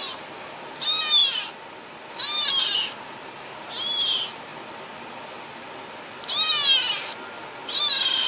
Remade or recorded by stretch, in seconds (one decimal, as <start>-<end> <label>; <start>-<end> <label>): 0.0-8.3 recorded